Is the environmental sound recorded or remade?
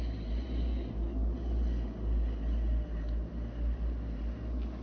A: recorded